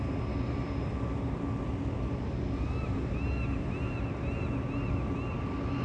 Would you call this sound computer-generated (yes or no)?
no